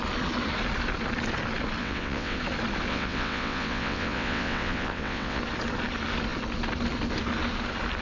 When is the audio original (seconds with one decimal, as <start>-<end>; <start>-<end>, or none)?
0.0-1.8; 2.4-2.9; 5.4-8.0